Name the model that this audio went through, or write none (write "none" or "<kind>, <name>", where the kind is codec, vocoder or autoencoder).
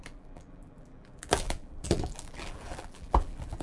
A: vocoder, BigVGAN v2